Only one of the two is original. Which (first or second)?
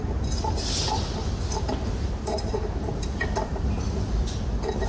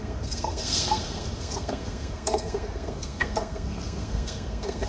first